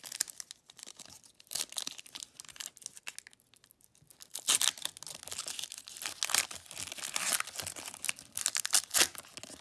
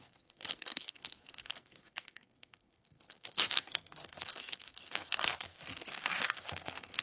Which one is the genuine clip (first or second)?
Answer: first